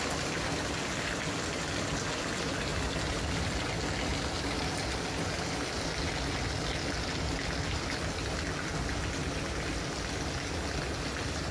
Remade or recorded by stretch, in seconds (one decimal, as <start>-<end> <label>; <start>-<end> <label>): 0.0-11.5 recorded